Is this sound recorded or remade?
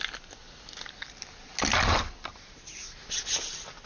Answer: recorded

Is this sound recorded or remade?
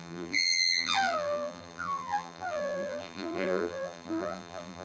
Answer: remade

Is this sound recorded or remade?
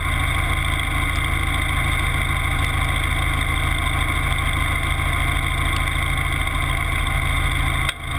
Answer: recorded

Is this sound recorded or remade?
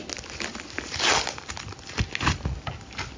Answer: recorded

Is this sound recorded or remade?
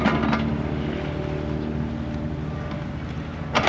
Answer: recorded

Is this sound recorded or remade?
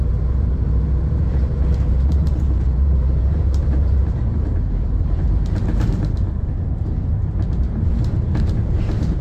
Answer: remade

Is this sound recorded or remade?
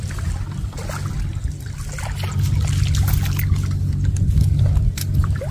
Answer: recorded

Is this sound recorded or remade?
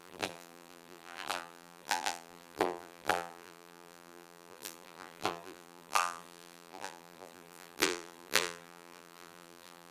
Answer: remade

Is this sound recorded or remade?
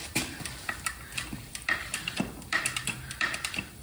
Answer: remade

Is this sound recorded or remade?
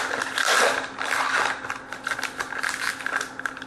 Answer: recorded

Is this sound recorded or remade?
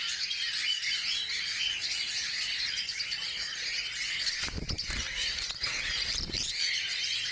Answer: recorded